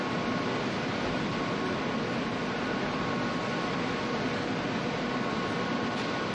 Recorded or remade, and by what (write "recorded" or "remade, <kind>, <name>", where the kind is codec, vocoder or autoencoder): recorded